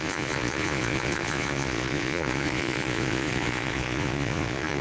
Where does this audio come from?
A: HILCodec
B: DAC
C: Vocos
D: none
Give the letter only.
C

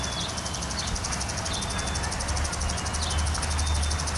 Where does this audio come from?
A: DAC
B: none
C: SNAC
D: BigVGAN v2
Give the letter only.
B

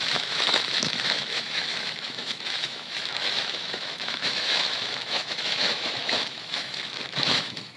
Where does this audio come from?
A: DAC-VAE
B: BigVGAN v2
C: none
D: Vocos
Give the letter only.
A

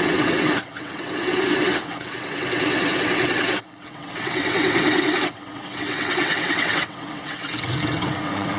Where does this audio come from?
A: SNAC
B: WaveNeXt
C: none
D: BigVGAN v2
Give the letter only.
B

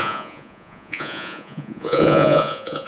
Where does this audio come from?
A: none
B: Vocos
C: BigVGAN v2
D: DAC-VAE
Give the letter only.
B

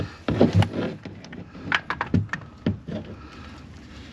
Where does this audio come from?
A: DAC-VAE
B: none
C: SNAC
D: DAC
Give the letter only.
B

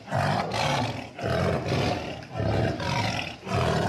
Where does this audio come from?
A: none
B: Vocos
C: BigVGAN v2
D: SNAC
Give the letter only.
A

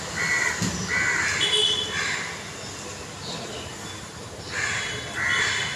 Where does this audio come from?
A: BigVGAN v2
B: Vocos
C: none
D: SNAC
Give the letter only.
C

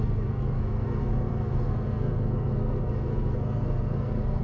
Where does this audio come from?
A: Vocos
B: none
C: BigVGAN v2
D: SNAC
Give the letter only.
D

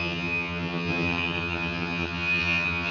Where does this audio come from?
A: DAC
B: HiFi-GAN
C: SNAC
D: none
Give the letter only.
B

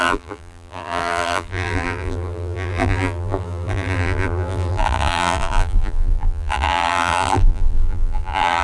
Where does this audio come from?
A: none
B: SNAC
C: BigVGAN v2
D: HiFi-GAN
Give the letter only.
C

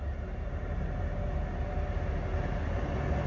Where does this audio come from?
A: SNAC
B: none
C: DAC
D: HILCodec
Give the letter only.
B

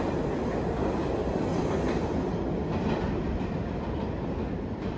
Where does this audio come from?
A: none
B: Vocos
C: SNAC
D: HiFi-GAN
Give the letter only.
A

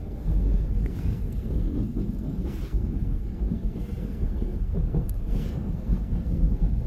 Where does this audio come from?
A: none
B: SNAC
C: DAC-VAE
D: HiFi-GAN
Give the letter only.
B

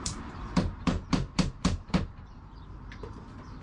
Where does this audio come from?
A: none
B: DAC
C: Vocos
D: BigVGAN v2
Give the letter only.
D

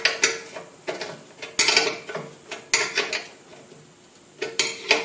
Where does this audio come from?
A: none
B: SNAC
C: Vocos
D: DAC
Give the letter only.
A